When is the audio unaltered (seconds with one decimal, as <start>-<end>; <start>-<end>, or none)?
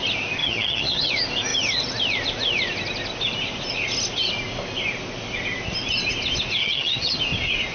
0.0-0.4; 1.1-6.6; 7.2-7.7